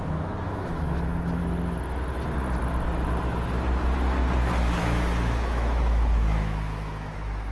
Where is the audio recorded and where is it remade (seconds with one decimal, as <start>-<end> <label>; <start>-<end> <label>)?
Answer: 0.0-1.4 remade; 1.4-4.8 recorded; 4.8-7.5 remade